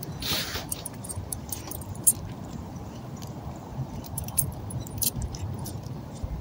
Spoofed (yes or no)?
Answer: yes